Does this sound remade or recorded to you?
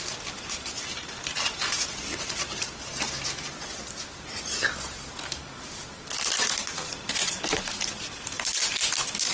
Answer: recorded